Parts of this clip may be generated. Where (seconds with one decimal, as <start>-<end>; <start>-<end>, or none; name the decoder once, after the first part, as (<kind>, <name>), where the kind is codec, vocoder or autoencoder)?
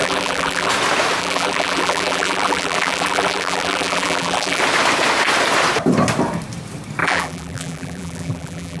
0.0-0.7 (vocoder, BigVGAN v2); 1.2-4.6; 7.0-8.8